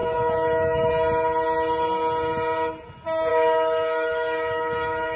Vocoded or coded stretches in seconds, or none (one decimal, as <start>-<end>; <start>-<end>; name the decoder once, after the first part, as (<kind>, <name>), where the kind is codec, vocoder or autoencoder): 0.0-0.9 (autoencoder, DAC-VAE); 3.3-5.2